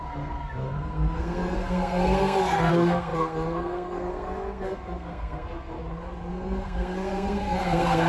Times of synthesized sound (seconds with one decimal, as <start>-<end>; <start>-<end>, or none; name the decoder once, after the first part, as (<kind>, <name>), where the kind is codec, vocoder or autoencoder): 0.0-5.8 (codec, SNAC); 6.3-8.1